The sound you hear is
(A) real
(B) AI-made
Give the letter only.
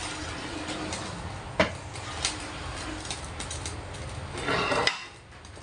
A